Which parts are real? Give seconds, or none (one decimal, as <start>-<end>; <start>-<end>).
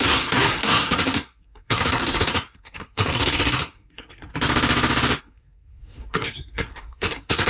4.3-5.2